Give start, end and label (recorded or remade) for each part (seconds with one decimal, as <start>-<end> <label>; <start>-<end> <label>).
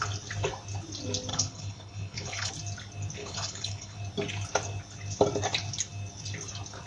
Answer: 0.0-1.3 recorded; 1.3-2.5 remade; 2.5-3.2 recorded; 3.2-4.0 remade; 4.0-6.9 recorded